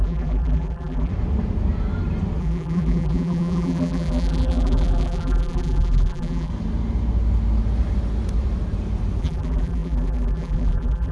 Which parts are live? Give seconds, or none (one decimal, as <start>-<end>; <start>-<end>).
1.1-2.4; 6.5-9.2